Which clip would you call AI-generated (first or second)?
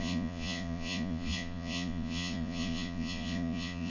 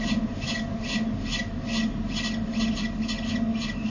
first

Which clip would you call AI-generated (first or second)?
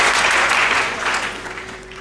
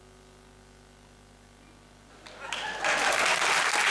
first